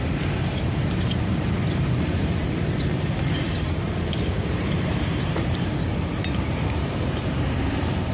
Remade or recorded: remade